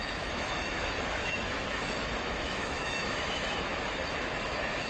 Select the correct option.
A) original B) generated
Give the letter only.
B